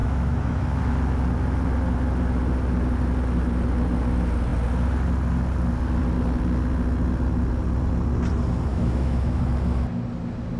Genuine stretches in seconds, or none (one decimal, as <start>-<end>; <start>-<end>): 0.8-8.7; 9.4-10.6